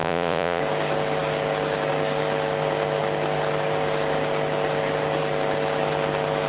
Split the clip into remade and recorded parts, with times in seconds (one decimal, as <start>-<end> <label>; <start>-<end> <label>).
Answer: 0.0-0.6 remade; 0.6-6.5 recorded